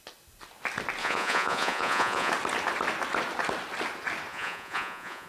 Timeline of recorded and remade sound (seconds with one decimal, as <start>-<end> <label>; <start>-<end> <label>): 0.0-1.0 recorded; 1.0-2.3 remade; 2.3-4.3 recorded; 4.3-5.3 remade

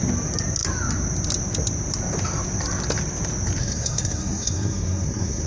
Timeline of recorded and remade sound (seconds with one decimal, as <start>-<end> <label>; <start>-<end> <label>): 0.0-3.6 recorded; 3.6-5.5 remade